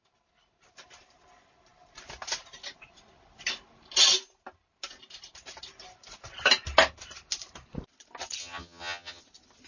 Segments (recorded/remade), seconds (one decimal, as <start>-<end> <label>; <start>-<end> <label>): 0.0-8.4 recorded; 8.4-9.2 remade; 9.2-9.7 recorded

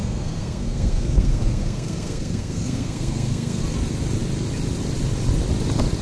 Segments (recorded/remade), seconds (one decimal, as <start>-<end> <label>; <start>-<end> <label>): 0.0-3.6 remade; 3.6-6.0 recorded

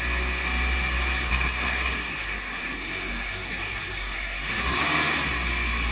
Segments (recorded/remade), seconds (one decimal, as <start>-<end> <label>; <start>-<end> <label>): 0.0-1.3 recorded; 1.3-4.8 remade; 4.8-5.9 recorded

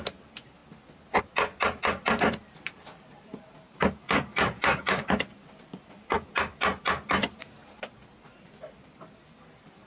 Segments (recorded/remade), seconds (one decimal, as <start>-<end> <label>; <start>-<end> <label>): 0.0-2.4 recorded; 2.4-6.3 remade; 6.3-7.2 recorded; 7.2-7.9 remade; 7.9-9.9 recorded

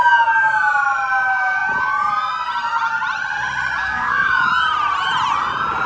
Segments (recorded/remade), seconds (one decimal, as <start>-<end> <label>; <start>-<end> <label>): 0.0-3.8 recorded; 3.8-4.5 remade; 4.5-5.9 recorded

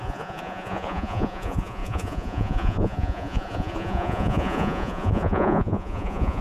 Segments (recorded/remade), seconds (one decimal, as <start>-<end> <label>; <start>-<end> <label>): 0.0-6.4 remade

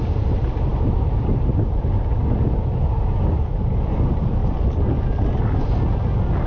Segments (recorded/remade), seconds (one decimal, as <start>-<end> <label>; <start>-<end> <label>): 0.0-6.5 recorded

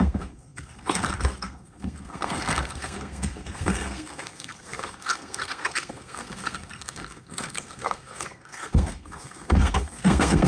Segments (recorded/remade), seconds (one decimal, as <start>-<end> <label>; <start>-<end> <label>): 0.0-10.5 remade